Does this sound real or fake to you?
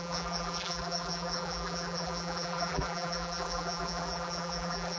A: fake